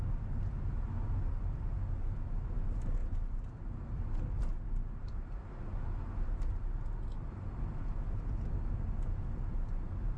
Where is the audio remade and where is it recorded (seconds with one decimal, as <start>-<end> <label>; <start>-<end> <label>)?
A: 0.0-10.2 recorded